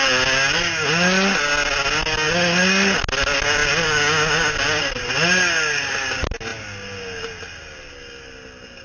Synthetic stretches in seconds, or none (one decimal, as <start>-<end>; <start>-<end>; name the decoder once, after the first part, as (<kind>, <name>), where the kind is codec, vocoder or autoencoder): none